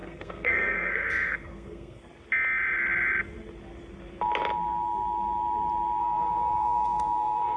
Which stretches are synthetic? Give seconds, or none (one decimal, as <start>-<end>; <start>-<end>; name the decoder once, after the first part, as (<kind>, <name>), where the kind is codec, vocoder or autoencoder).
0.0-2.0 (codec, SNAC); 6.0-7.6